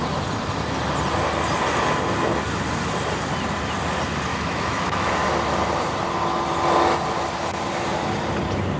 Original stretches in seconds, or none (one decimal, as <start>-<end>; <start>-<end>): 0.0-4.3; 5.1-8.8